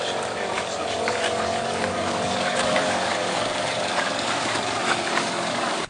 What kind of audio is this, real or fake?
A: fake